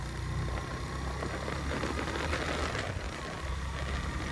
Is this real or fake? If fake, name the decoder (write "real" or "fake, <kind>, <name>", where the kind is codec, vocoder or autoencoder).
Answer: real